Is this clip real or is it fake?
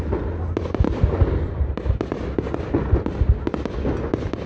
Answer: real